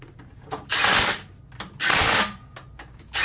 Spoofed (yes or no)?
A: no